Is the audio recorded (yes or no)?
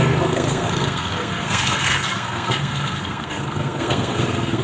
no